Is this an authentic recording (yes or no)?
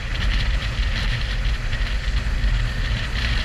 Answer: yes